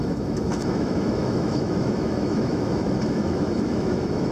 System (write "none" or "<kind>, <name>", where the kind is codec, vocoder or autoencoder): autoencoder, DAC-VAE